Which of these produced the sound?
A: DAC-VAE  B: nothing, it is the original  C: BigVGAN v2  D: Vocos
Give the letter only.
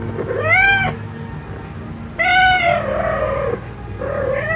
B